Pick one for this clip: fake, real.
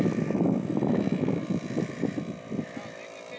real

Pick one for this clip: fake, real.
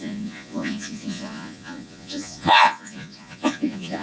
fake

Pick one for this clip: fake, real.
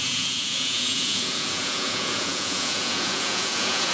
fake